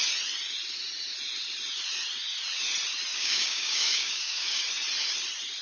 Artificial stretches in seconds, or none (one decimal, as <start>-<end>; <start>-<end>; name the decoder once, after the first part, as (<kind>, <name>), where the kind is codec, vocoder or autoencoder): 3.1-4.6 (codec, DAC)

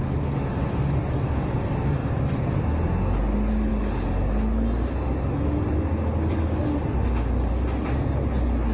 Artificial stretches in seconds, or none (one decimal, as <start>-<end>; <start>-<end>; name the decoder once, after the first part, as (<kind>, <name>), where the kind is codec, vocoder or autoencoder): none

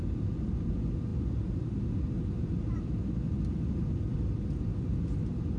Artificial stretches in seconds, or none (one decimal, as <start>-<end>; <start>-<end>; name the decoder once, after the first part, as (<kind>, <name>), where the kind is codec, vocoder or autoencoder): none

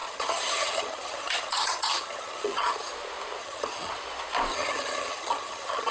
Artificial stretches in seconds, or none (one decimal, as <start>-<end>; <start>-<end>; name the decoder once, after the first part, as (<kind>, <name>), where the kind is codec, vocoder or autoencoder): 0.0-2.9 (vocoder, HiFi-GAN); 3.4-3.9; 4.5-5.9